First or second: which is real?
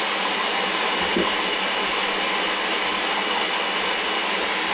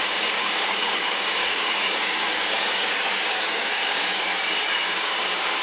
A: first